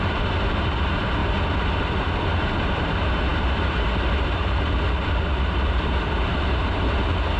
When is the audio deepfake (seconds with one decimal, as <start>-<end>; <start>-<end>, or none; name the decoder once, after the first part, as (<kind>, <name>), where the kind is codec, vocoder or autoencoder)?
0.0-1.2 (vocoder, BigVGAN v2); 1.9-7.4